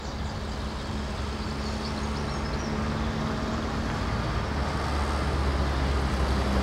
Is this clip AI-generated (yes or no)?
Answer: no